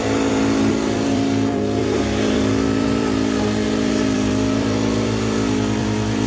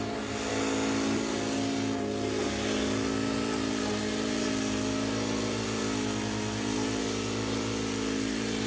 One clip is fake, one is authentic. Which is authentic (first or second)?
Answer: second